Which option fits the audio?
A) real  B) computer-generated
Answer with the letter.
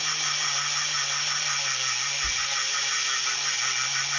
A